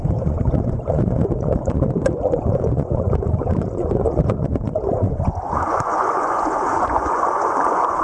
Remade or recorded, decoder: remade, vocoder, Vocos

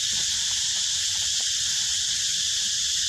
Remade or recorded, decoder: recorded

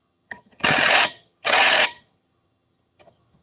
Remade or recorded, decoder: remade, vocoder, HiFi-GAN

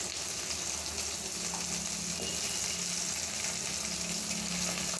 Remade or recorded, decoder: recorded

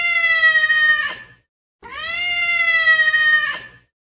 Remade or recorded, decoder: recorded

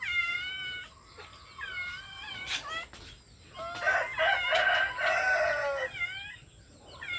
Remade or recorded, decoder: recorded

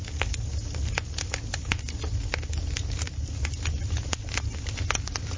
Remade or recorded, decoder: recorded